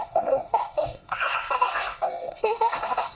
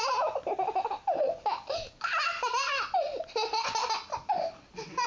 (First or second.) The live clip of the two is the second